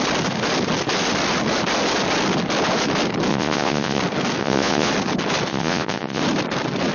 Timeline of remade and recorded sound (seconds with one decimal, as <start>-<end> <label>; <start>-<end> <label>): 0.0-3.3 recorded; 3.3-4.0 remade; 4.0-4.4 recorded; 4.4-4.9 remade; 4.9-5.5 recorded; 5.5-6.2 remade; 6.2-6.9 recorded